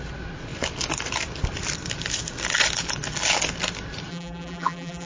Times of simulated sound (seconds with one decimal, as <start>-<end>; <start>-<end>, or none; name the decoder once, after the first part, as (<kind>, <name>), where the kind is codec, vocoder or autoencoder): 4.1-5.1 (vocoder, BigVGAN v2)